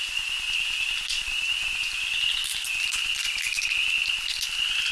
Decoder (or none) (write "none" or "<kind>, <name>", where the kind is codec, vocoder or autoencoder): none